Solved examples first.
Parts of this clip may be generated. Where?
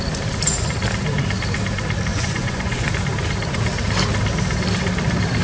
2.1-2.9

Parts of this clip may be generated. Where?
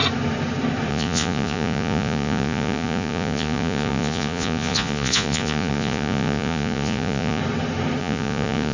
0.9-7.4; 8.0-8.7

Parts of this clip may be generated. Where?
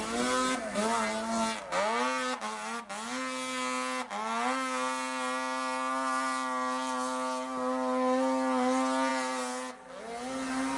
none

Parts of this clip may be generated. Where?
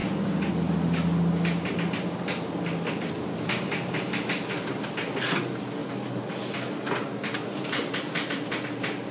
none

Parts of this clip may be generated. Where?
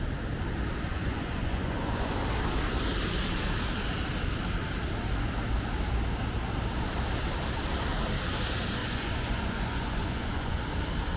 0.9-2.2; 8.8-10.6